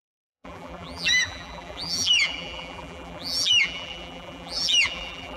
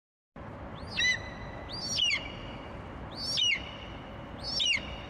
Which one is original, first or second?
second